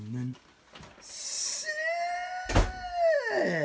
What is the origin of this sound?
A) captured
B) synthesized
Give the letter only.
A